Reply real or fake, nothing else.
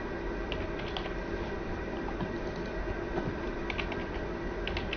real